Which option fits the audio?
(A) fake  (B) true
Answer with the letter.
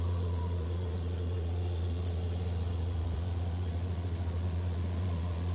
A